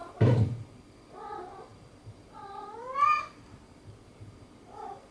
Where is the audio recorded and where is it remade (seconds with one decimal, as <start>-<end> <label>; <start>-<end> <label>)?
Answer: 0.0-0.6 remade; 0.6-5.1 recorded